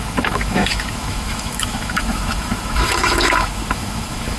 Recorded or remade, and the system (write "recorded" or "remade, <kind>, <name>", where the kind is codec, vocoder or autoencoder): remade, autoencoder, DAC-VAE